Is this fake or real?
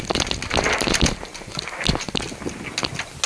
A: real